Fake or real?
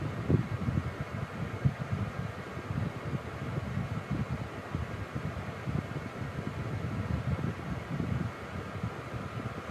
real